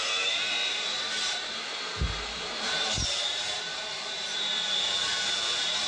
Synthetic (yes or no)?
yes